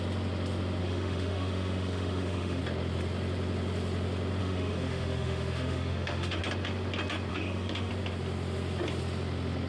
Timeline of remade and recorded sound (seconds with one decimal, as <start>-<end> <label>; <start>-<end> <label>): 0.0-0.8 recorded; 0.8-2.6 remade; 2.6-4.4 recorded; 4.4-6.4 remade; 6.4-7.3 recorded; 7.3-7.9 remade; 7.9-9.7 recorded